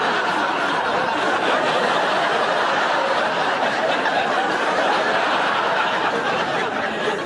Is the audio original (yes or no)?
no